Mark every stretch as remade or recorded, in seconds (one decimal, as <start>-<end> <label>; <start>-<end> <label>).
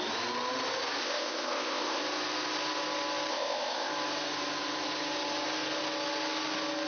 0.0-1.0 recorded; 1.0-2.0 remade; 2.0-3.3 recorded; 3.3-3.9 remade; 3.9-6.9 recorded